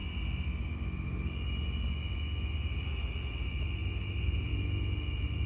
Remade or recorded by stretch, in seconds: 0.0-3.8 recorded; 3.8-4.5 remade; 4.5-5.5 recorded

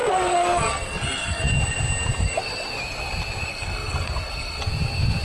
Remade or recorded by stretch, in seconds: 0.0-1.4 remade; 1.4-3.5 recorded; 3.5-4.6 remade; 4.6-5.2 recorded